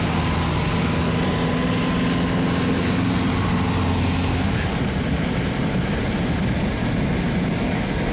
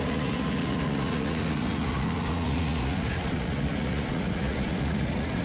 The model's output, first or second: second